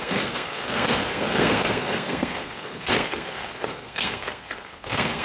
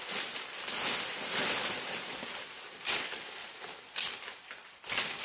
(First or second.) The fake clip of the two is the first